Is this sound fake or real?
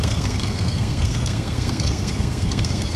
fake